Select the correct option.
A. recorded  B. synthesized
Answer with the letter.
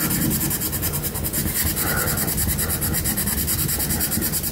A